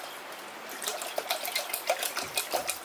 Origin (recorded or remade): recorded